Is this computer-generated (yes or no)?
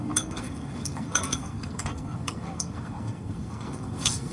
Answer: yes